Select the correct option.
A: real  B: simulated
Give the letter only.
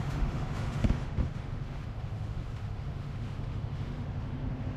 B